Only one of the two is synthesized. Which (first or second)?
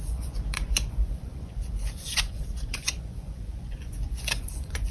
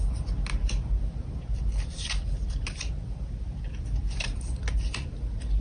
first